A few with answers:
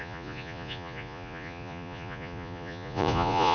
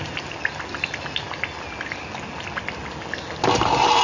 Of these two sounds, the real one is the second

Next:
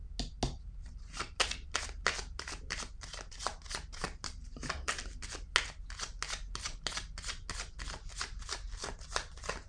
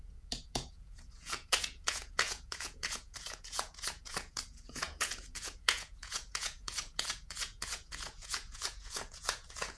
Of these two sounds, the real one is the first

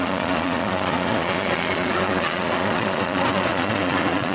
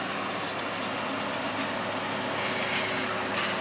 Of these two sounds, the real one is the second